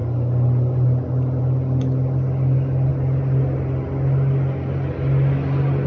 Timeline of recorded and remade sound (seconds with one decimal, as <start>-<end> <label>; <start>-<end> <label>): 0.0-5.9 recorded